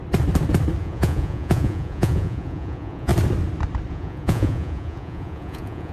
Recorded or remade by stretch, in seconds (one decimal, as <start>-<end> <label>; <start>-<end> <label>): 0.0-0.8 recorded; 0.8-3.1 remade; 3.1-3.9 recorded; 3.9-5.9 remade